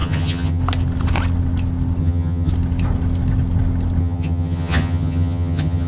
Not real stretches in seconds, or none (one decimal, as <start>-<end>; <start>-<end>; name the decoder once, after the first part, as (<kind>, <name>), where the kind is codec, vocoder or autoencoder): 0.0-0.6 (vocoder, HiFi-GAN); 2.0-2.5; 4.0-5.9